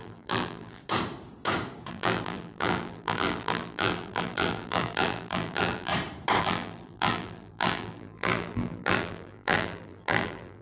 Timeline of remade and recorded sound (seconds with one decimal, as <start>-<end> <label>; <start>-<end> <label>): 0.0-0.8 remade; 0.8-1.9 recorded; 1.9-5.9 remade; 5.9-6.4 recorded; 6.4-10.6 remade